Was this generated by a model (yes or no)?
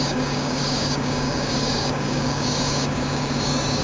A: yes